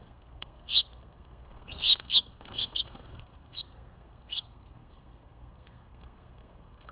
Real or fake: fake